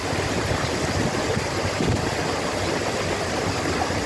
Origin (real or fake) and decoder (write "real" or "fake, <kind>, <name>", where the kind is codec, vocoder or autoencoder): real